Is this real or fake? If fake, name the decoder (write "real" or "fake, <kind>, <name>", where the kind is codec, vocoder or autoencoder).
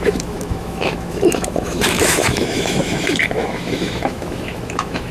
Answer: fake, autoencoder, DAC-VAE